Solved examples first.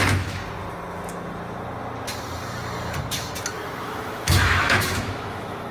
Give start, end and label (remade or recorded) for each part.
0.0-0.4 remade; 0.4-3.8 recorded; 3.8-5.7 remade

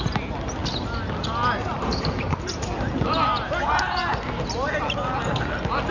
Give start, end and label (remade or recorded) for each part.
0.0-5.9 recorded